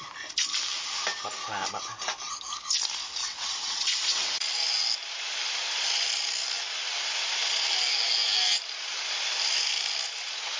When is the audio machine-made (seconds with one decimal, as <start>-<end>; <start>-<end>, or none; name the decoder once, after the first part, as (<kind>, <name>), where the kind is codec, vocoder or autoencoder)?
3.2-4.4 (vocoder, WaveNeXt)